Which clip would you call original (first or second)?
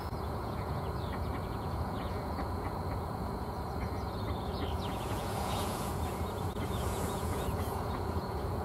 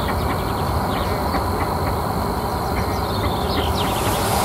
second